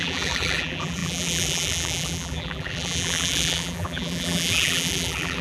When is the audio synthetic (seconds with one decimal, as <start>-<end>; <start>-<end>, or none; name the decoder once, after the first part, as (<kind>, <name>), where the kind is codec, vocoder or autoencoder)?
0.0-5.4 (vocoder, BigVGAN v2)